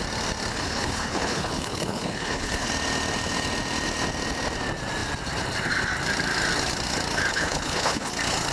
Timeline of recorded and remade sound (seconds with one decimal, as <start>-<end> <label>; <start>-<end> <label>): 0.0-0.5 recorded; 0.5-2.7 remade; 2.7-7.3 recorded; 7.3-8.1 remade; 8.1-8.5 recorded